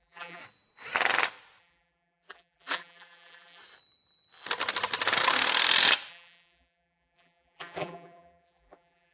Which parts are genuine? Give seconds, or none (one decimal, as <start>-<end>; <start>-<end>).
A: 0.4-1.6; 3.6-6.1